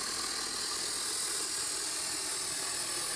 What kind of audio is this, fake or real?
real